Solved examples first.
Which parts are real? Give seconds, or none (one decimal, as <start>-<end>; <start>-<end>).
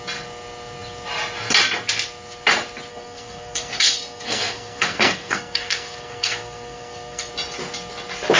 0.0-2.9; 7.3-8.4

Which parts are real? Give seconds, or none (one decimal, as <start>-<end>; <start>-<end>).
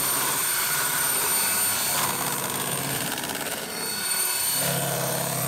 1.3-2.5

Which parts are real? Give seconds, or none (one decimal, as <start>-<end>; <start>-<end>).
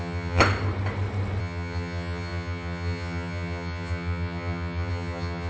0.4-1.4